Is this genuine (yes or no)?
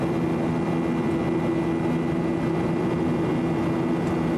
yes